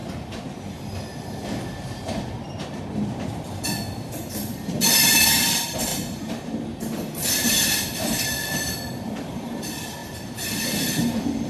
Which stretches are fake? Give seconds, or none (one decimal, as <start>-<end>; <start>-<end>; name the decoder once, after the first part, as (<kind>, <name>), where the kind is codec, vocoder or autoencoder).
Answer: 2.9-5.9 (vocoder, BigVGAN v2); 7.3-11.5